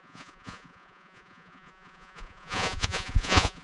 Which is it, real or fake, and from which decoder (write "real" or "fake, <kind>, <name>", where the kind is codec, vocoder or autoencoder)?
fake, vocoder, Vocos